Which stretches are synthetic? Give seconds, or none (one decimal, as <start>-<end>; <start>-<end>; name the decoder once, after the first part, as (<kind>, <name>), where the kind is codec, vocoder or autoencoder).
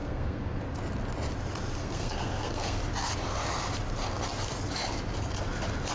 0.0-0.6 (codec, SNAC); 1.8-2.8